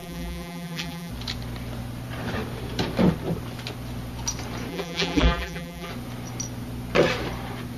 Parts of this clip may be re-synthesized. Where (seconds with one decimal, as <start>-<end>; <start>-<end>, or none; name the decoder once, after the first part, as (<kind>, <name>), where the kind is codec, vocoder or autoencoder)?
0.0-1.1 (vocoder, BigVGAN v2); 4.7-5.9